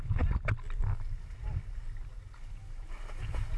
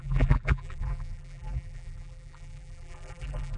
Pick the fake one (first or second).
second